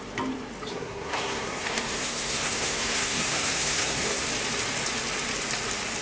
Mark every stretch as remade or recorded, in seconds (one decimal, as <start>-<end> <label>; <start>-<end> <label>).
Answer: 0.0-0.7 recorded; 0.7-4.3 remade; 4.3-6.0 recorded